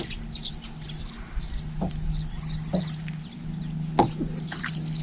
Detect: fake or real real